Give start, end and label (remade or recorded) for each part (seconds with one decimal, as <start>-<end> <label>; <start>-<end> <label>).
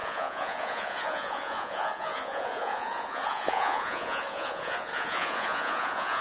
0.0-6.2 remade